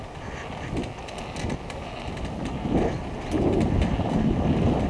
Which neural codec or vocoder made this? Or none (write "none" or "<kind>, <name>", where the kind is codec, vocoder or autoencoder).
none